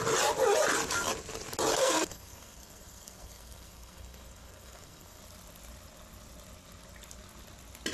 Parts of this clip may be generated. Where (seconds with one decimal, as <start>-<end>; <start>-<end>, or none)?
1.7-5.2